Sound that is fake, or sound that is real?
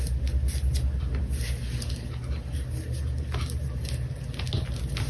real